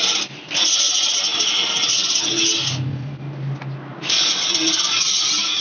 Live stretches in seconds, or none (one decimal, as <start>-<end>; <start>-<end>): 0.0-5.6